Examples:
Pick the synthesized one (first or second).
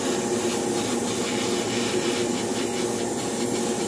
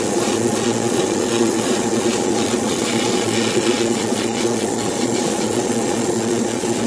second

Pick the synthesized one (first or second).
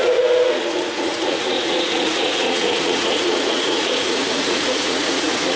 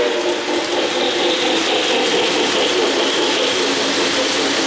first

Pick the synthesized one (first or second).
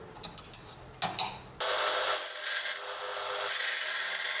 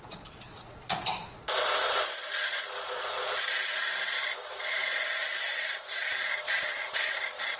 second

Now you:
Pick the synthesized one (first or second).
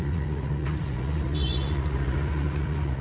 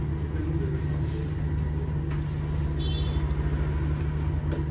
first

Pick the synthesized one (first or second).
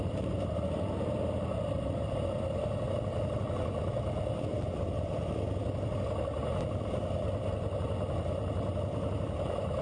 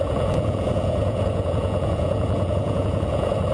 second